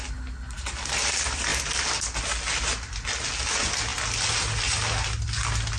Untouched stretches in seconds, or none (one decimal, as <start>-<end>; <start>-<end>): 0.0-5.8